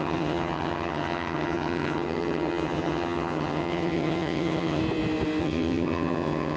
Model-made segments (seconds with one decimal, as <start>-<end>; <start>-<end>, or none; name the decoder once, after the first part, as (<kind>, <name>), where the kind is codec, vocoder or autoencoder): 0.0-4.8 (vocoder, HiFi-GAN); 5.4-6.6